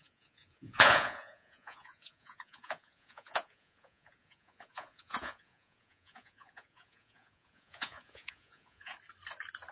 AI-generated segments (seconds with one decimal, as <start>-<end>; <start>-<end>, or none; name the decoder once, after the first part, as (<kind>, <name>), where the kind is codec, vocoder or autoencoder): 0.0-8.9 (vocoder, Vocos)